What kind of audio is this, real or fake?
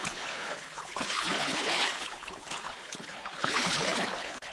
fake